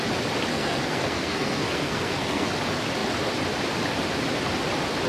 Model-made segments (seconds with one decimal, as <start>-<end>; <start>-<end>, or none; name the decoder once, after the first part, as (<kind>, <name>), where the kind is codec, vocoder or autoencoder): 0.5-2.5 (codec, SNAC)